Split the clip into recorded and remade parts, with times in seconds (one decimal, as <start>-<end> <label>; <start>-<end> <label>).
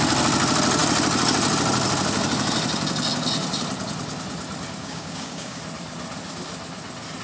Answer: 0.0-4.8 recorded; 4.8-5.6 remade; 5.6-7.2 recorded